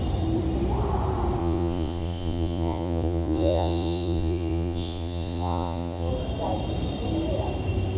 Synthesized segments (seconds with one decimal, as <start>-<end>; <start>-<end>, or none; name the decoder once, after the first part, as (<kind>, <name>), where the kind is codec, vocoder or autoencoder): 1.4-6.1 (vocoder, Vocos)

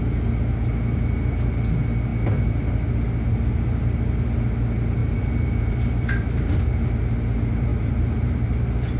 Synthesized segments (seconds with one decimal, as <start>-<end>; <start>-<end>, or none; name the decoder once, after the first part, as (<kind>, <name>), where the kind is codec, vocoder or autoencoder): 5.0-6.6 (vocoder, BigVGAN v2); 7.7-9.0

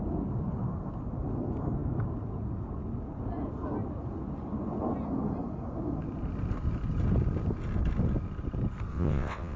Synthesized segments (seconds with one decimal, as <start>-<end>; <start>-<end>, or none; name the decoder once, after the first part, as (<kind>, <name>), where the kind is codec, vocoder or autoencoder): 8.9-9.6 (vocoder, WaveNeXt)

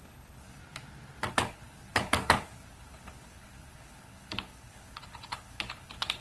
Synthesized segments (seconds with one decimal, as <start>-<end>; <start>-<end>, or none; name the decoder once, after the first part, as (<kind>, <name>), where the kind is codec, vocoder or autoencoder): 0.0-0.6 (codec, HILCodec); 1.3-6.2

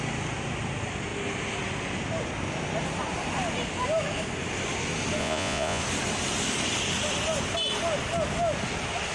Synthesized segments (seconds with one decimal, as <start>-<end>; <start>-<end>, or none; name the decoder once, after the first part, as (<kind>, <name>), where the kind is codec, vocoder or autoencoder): 5.2-5.8 (vocoder, Vocos)

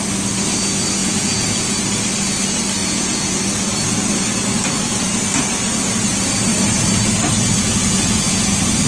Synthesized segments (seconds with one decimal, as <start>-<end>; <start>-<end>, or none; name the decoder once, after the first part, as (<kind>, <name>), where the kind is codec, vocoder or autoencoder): 1.0-1.8 (vocoder, Vocos); 2.8-3.4; 7.7-8.5